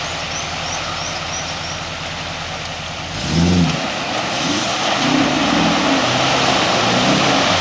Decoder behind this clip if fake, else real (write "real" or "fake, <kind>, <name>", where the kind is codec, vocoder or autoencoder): real